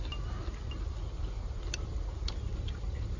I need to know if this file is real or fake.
real